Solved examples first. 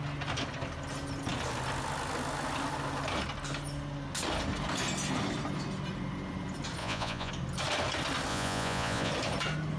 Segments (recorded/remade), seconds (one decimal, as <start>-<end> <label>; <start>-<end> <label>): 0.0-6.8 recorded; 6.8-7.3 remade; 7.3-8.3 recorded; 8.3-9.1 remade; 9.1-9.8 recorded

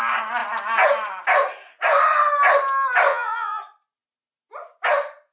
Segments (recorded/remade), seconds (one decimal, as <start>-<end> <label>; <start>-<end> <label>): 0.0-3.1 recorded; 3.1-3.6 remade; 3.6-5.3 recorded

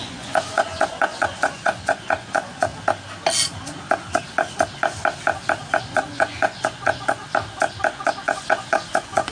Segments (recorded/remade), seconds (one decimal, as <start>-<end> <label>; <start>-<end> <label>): 0.0-2.7 remade; 2.7-5.8 recorded; 5.8-7.2 remade; 7.2-7.9 recorded; 7.9-9.3 remade

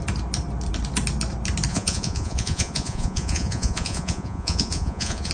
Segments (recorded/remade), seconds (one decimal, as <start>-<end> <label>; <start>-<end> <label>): 0.0-1.7 recorded; 1.7-5.3 remade

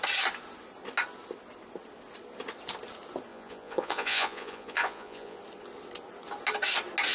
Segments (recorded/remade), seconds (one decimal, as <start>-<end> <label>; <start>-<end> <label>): 0.0-3.3 recorded; 3.3-5.4 remade; 5.4-7.1 recorded

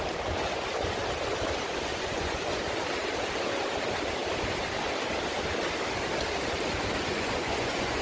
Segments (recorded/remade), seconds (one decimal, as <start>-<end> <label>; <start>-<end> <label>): 0.0-1.9 recorded; 1.9-2.6 remade; 2.6-7.1 recorded; 7.1-8.0 remade